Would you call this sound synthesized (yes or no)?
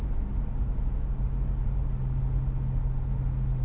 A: no